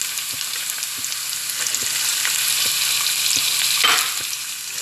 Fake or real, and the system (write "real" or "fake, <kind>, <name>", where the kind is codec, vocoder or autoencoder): real